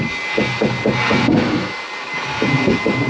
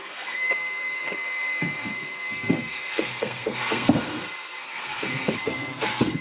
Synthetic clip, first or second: second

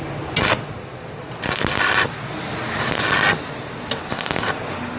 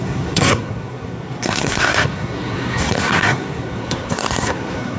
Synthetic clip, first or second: second